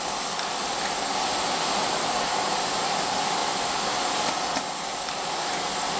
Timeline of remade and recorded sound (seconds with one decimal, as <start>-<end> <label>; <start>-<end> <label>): 0.0-6.0 recorded